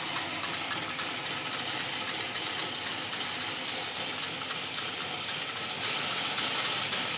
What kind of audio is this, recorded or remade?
recorded